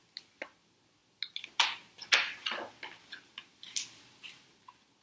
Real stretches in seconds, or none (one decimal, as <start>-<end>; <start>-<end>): 0.0-5.0